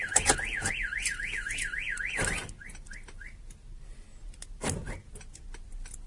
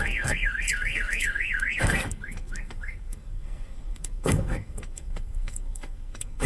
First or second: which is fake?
second